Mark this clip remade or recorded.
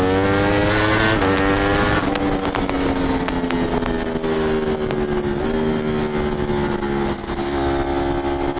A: recorded